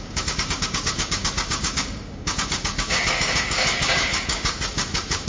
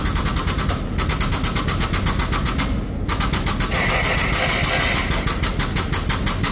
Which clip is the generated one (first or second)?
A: first